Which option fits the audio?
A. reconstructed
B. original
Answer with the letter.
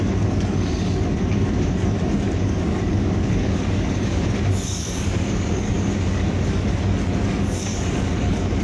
A